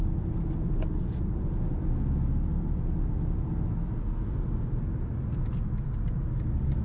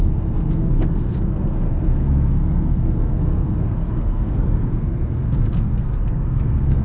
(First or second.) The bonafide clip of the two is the first